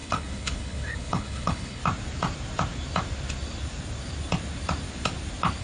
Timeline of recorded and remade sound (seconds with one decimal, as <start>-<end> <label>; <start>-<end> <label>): 0.0-1.8 remade; 1.8-5.6 recorded